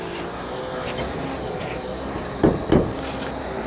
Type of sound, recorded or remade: recorded